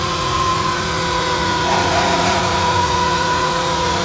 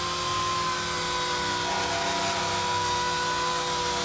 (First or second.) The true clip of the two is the second